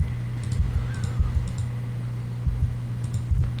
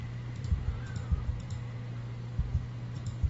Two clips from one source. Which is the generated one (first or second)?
second